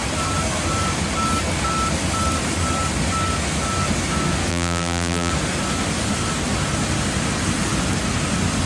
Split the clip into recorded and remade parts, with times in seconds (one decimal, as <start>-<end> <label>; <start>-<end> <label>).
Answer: 0.0-4.5 recorded; 4.5-5.3 remade; 5.3-8.7 recorded